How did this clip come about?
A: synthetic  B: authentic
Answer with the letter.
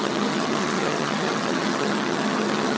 A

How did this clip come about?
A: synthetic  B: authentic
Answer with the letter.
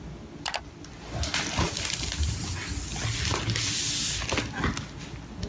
B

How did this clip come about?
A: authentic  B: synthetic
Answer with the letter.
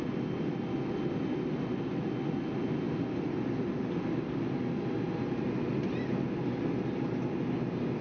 A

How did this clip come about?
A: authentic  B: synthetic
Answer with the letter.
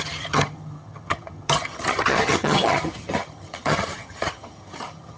B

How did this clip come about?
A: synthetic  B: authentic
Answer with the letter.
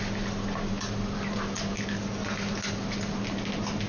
B